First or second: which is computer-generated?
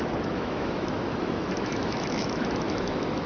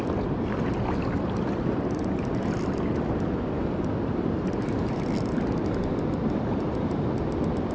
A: first